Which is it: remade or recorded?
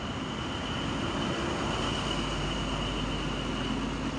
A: recorded